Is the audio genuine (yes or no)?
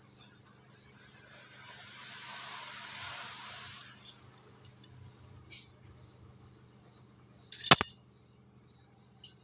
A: yes